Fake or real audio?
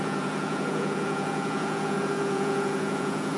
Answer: fake